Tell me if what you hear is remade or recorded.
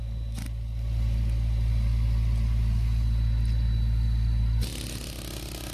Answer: recorded